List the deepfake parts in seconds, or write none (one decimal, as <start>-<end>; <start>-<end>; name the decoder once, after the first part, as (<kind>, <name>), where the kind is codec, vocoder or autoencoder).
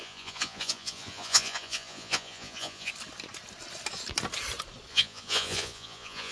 0.0-2.9 (vocoder, Vocos); 4.9-6.3